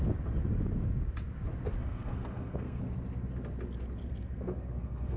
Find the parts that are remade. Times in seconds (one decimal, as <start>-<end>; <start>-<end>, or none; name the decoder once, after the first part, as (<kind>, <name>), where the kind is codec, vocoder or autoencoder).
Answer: 1.8-2.8 (codec, SNAC); 4.0-5.2